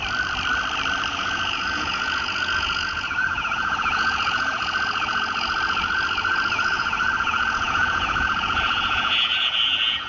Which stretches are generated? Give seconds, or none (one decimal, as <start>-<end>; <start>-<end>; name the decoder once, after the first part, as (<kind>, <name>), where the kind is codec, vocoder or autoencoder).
1.1-10.1 (vocoder, Vocos)